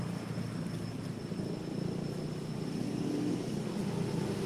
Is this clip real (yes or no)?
yes